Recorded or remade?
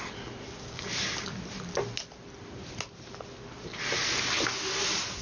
recorded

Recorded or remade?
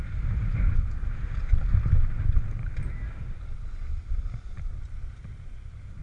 recorded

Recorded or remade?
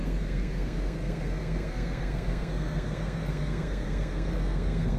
remade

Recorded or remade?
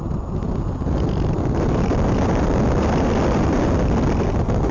recorded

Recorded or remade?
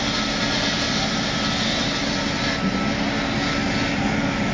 recorded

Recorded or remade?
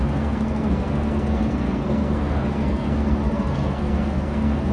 remade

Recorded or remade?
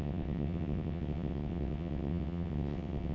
remade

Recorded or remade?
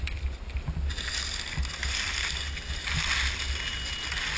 recorded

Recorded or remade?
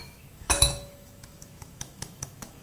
remade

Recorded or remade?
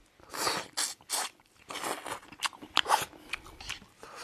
recorded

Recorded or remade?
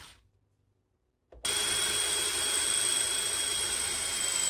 recorded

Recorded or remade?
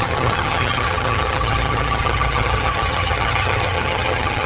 remade